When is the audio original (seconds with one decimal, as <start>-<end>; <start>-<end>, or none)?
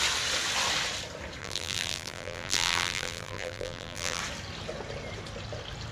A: 0.0-1.4; 4.2-5.9